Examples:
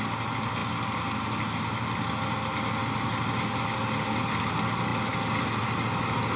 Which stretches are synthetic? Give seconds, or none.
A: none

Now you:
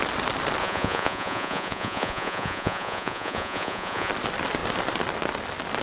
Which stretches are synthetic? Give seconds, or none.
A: 0.6-4.1 (vocoder, Vocos)

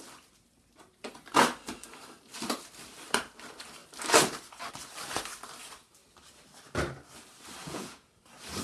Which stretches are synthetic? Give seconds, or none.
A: 7.6-8.2 (vocoder, Vocos)